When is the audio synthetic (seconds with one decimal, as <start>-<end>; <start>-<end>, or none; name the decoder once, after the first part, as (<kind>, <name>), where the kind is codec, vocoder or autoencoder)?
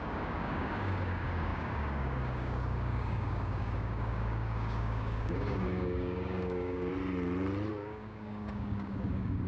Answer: 0.0-6.9 (codec, DAC); 7.7-9.5